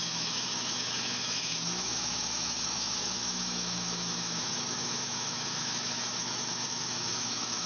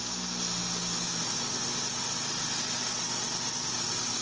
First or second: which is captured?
second